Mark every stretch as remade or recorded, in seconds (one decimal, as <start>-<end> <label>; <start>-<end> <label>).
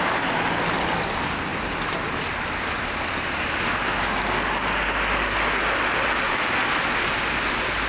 0.0-7.9 recorded